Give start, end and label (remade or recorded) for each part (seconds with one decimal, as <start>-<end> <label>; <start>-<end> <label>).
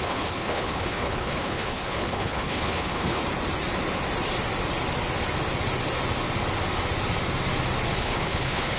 0.0-3.2 remade; 3.2-7.9 recorded; 7.9-8.8 remade